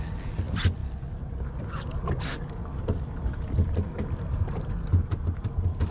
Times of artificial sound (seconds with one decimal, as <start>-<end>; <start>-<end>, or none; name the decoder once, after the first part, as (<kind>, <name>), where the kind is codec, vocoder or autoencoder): none